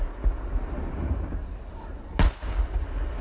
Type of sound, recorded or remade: recorded